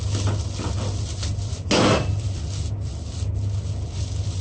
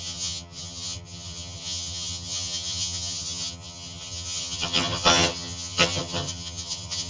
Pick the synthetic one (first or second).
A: second